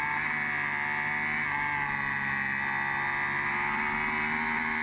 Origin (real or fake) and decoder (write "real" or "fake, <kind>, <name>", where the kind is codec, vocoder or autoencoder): real